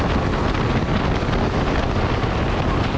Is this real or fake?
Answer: real